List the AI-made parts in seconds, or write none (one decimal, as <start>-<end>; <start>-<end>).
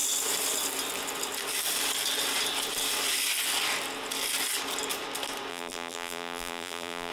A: 5.5-7.1